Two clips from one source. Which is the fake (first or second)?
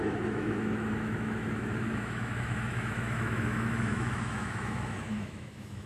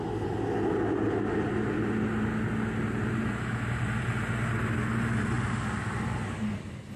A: first